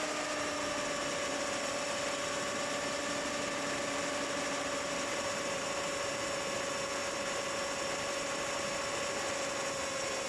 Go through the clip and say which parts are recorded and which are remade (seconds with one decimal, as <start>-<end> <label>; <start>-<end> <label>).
0.0-10.3 remade